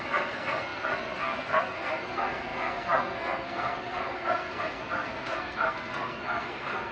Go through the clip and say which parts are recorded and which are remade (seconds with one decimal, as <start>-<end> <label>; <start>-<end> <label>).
0.0-6.9 remade

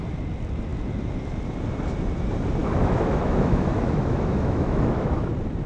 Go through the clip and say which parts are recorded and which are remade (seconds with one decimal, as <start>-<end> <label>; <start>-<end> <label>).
0.0-2.6 recorded; 2.6-5.3 remade; 5.3-5.7 recorded

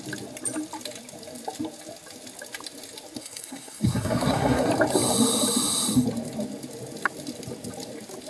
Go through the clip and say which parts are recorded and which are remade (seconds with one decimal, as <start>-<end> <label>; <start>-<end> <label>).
0.0-3.2 recorded; 3.2-4.7 remade; 4.7-8.3 recorded